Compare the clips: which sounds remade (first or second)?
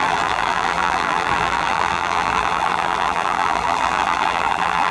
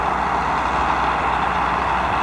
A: first